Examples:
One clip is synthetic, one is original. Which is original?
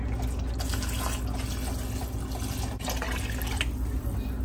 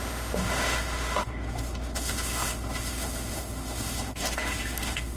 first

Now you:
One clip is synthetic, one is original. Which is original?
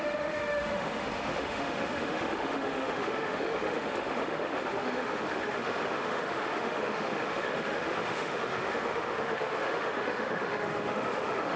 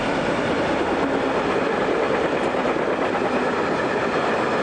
second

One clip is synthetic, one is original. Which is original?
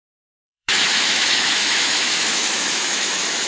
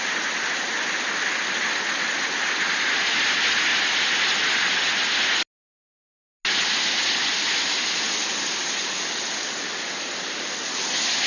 second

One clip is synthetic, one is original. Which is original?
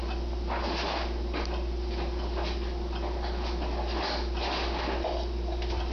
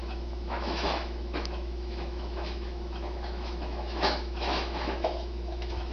first